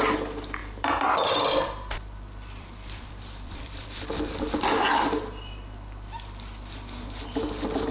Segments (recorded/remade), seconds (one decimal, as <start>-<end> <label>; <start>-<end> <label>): 0.0-0.6 recorded; 0.6-4.2 remade; 4.2-7.9 recorded